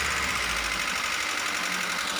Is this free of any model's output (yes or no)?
yes